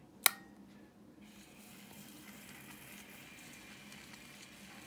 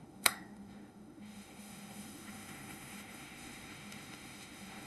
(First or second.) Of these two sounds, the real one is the first